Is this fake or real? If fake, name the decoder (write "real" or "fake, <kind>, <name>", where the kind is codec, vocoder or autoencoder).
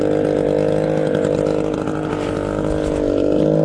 real